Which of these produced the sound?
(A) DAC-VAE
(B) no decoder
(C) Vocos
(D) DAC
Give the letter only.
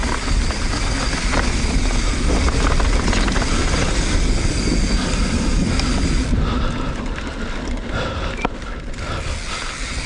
B